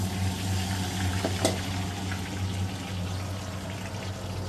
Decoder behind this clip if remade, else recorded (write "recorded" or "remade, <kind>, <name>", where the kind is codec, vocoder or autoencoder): recorded